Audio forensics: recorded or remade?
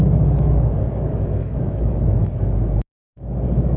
remade